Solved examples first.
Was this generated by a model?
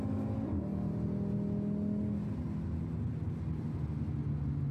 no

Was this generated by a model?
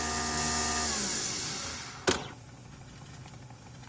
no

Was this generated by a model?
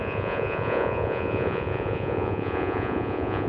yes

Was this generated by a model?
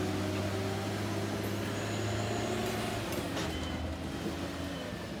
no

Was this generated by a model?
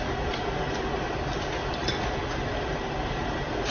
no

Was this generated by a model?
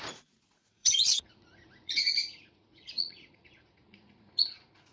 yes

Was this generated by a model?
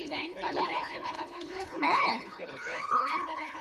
yes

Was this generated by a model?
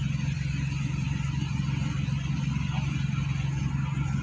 no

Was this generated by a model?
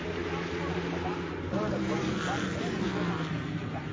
yes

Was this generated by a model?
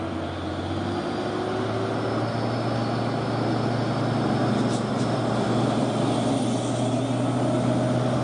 no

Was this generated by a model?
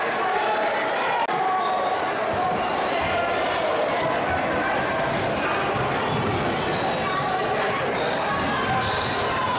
no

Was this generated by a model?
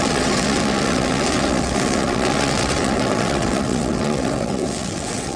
yes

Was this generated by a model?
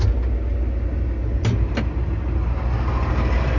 no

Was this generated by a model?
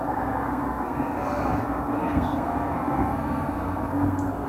yes